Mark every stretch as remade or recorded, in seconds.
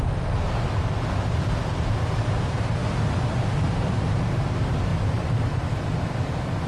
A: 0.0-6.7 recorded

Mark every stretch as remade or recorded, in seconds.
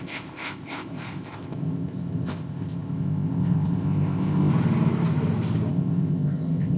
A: 0.0-4.5 remade; 4.5-5.7 recorded; 5.7-6.8 remade